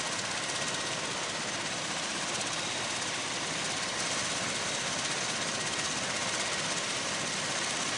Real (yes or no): yes